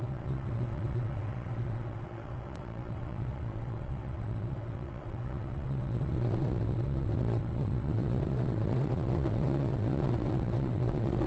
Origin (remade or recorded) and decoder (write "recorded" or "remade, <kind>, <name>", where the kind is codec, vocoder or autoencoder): remade, vocoder, WaveNeXt